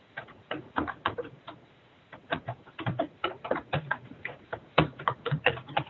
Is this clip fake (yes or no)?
yes